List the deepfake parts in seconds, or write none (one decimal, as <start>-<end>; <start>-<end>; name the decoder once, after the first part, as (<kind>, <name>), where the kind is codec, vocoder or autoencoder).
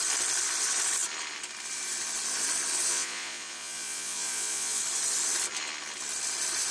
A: 2.9-4.8 (vocoder, Vocos)